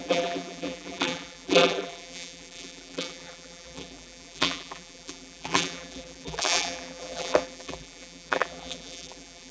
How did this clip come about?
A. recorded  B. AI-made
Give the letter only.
B